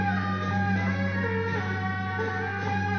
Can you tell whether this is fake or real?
real